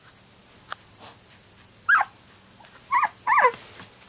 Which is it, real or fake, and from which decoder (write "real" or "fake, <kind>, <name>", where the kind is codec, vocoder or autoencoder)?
real